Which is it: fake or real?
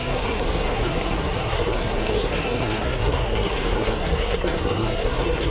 fake